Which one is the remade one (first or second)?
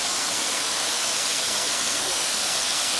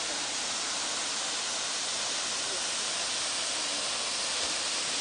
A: first